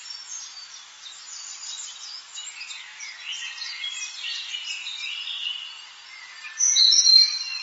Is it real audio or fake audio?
fake